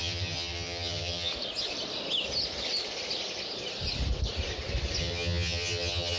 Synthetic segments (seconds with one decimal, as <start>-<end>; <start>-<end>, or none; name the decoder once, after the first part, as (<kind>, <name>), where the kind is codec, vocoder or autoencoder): 0.0-1.3 (vocoder, HiFi-GAN); 5.0-6.2